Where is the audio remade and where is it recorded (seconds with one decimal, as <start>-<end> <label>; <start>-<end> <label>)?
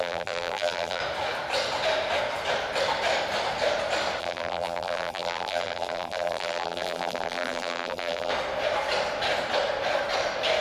0.0-1.0 remade; 1.0-4.2 recorded; 4.2-8.3 remade; 8.3-10.6 recorded